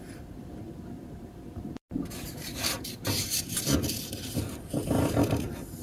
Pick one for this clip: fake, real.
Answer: fake